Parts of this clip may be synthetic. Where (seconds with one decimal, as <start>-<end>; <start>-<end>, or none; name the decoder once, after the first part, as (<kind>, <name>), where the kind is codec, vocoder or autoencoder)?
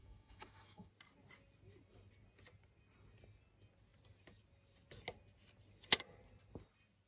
0.0-0.9 (autoencoder, DAC-VAE)